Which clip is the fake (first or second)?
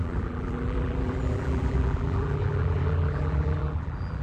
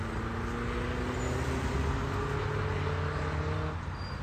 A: first